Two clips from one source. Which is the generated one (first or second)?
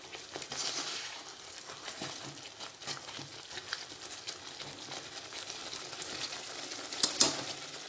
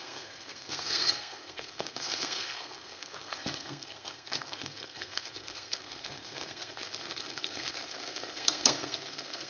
second